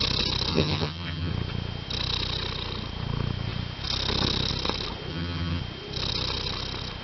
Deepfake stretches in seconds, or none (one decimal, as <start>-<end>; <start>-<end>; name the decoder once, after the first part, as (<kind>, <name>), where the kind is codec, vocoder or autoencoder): 0.5-1.3 (vocoder, HiFi-GAN); 5.1-5.6

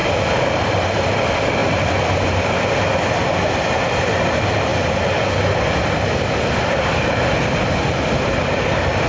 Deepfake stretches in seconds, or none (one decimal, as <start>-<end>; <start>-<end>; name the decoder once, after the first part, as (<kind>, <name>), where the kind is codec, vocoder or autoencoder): none

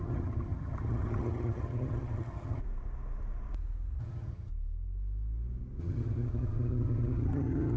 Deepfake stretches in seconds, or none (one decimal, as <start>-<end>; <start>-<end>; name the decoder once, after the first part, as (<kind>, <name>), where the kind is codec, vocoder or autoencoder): 0.0-2.6 (vocoder, HiFi-GAN); 4.0-4.5; 5.8-7.8

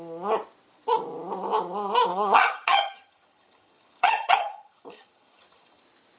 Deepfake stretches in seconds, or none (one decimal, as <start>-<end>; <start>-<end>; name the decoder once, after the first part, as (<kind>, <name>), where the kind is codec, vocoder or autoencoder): 2.1-5.8 (vocoder, HiFi-GAN)

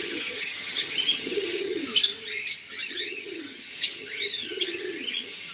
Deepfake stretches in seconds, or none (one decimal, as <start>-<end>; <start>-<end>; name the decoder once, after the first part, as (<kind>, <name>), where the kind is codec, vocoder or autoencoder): 0.0-1.8 (vocoder, HiFi-GAN); 2.9-5.5

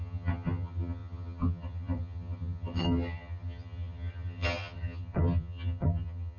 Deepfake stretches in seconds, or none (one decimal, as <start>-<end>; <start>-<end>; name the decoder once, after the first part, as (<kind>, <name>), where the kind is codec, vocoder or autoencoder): 0.0-6.4 (vocoder, HiFi-GAN)

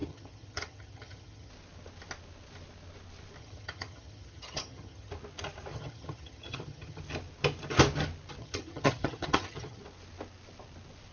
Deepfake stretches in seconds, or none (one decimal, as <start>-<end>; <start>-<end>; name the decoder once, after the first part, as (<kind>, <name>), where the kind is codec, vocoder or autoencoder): 0.0-1.5 (vocoder, HiFi-GAN); 3.4-5.1; 5.7-7.0; 8.4-9.8